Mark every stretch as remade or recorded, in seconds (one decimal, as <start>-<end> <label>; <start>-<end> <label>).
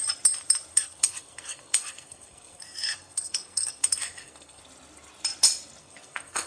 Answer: 0.0-0.7 recorded; 0.7-4.6 remade; 4.6-5.8 recorded; 5.8-6.5 remade